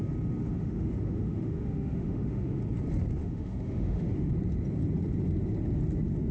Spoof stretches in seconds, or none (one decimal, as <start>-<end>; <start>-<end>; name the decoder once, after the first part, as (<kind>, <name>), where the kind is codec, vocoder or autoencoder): 0.4-2.6 (autoencoder, DAC-VAE); 3.2-4.3